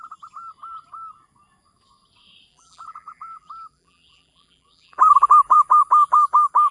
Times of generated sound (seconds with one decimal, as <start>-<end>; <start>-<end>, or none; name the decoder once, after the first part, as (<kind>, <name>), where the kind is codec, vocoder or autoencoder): 2.5-6.7 (vocoder, BigVGAN v2)